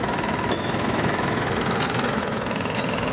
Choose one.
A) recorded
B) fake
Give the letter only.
B